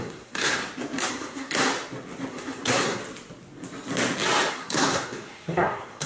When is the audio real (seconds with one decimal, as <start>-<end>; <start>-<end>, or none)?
0.6-1.1; 1.7-2.3; 3.0-4.5